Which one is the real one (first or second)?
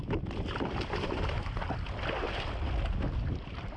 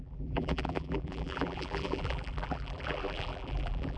first